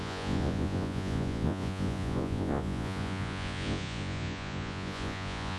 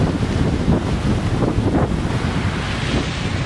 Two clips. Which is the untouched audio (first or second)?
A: second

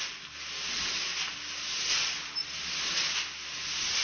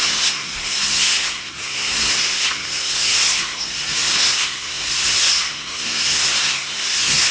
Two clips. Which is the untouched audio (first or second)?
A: first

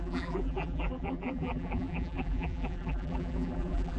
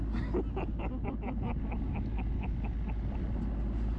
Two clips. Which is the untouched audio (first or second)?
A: second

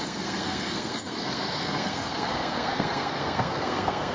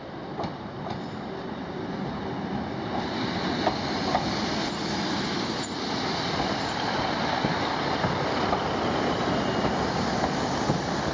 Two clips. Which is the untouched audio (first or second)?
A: second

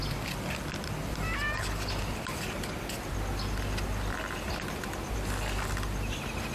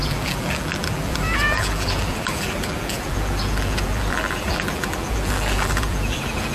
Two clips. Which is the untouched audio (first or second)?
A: first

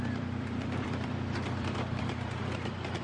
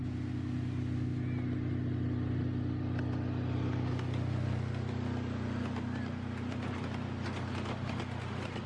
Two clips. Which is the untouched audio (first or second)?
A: second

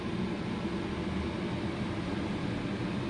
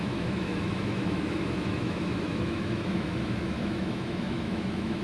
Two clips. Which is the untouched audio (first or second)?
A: first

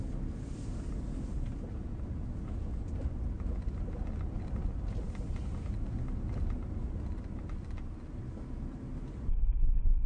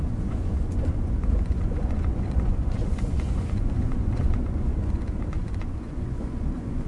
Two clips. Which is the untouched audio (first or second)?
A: first